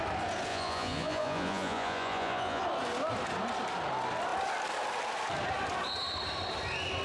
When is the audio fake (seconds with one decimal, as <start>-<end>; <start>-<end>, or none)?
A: 0.5-2.6